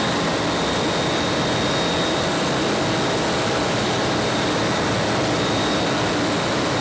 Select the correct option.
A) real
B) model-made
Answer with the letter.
A